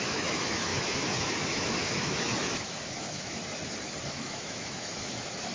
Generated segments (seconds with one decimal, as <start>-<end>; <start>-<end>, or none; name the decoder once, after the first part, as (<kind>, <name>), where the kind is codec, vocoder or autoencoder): 0.0-3.4 (autoencoder, DAC-VAE); 4.0-5.5